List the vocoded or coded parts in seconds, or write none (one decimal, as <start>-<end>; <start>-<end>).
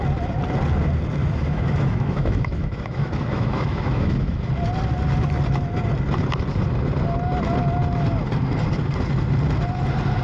1.2-4.5